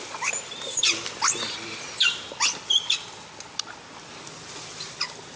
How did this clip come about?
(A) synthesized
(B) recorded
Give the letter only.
B